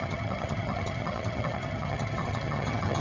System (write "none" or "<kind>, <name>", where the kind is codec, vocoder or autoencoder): vocoder, HiFi-GAN